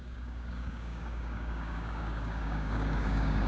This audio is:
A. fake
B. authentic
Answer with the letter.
A